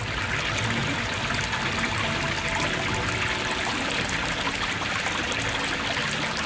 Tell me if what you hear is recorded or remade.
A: recorded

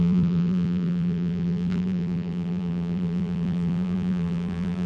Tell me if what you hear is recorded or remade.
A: remade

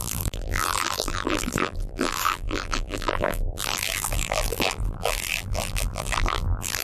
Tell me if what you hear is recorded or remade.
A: remade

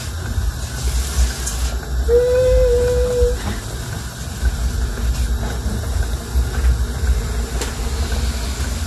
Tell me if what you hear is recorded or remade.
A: recorded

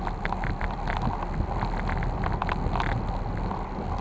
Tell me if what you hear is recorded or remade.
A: recorded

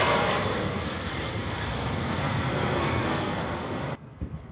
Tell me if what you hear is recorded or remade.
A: remade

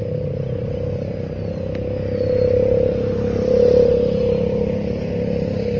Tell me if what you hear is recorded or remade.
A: recorded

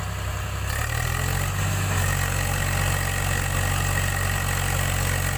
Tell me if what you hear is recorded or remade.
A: recorded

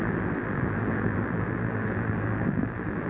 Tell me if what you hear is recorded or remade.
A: remade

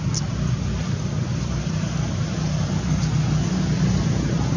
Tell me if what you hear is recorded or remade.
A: recorded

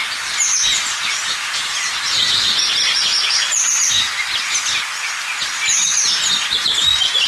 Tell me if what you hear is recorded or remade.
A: recorded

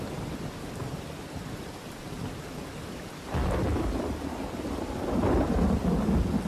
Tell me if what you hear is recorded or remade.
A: recorded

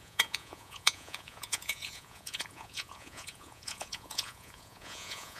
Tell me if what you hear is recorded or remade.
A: remade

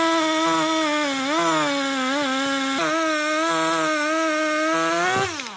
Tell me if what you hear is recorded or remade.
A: recorded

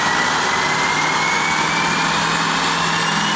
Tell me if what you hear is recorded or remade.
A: recorded